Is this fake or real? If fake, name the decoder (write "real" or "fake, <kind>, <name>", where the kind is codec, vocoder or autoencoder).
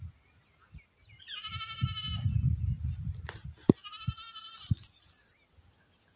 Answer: real